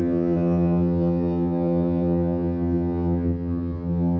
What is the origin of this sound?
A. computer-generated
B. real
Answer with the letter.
A